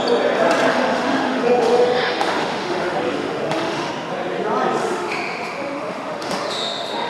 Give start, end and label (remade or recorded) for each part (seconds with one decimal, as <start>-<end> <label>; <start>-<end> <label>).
0.0-0.7 recorded; 0.7-3.9 remade; 3.9-4.8 recorded; 4.8-7.1 remade